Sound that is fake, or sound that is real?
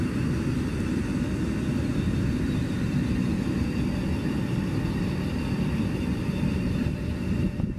real